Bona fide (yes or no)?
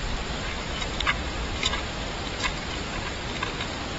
yes